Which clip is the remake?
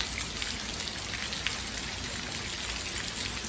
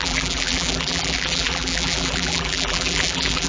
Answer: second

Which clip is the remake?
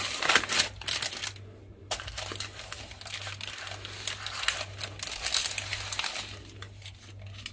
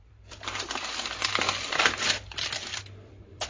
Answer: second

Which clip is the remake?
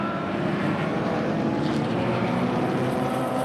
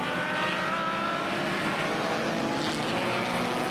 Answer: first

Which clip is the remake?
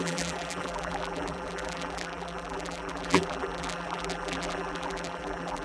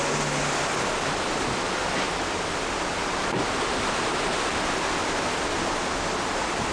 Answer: first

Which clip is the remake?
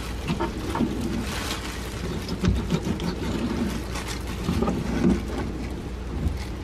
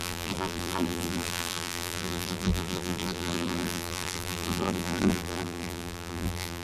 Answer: second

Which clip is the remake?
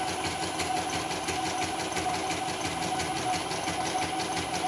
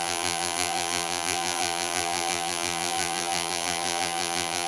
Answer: second